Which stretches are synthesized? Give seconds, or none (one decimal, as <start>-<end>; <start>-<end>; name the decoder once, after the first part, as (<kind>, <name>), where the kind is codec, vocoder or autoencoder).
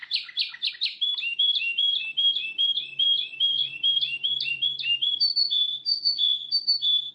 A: 5.9-6.5 (vocoder, Vocos)